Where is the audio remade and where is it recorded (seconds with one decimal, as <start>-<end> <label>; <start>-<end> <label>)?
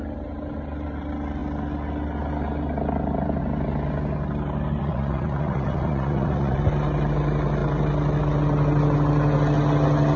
0.0-4.8 recorded; 4.8-6.6 remade; 6.6-10.2 recorded